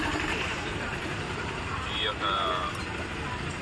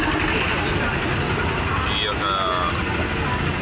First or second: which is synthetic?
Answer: first